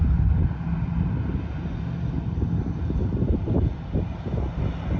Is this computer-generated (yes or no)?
no